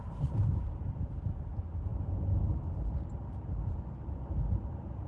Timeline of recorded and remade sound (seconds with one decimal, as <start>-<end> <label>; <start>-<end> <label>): 0.0-1.1 remade; 1.1-5.1 recorded